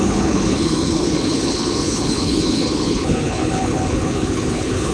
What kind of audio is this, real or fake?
fake